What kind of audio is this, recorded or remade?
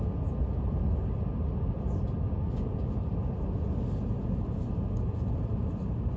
recorded